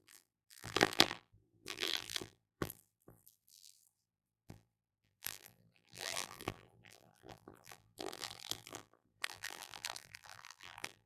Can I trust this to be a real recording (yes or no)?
no